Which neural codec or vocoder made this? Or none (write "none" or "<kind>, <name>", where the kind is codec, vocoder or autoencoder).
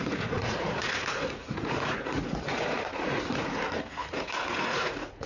vocoder, Vocos